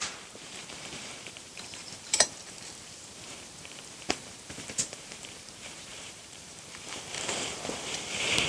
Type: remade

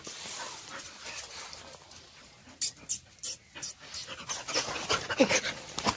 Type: recorded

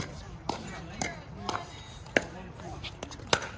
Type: remade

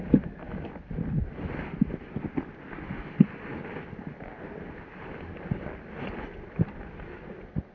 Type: recorded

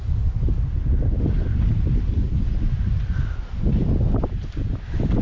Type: recorded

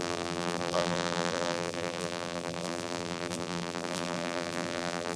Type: remade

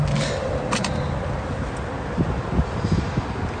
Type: recorded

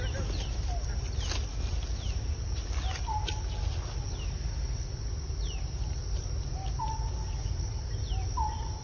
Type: recorded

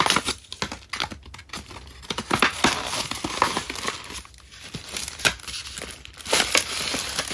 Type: recorded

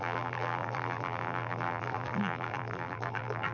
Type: remade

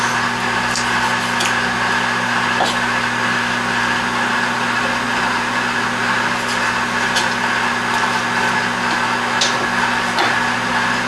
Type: recorded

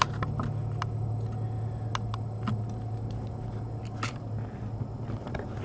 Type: recorded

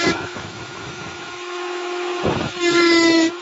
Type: remade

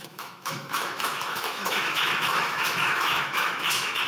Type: remade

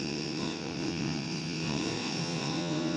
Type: remade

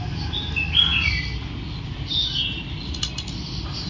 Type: recorded